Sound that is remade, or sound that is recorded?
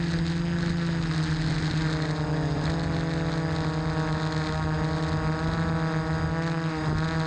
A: recorded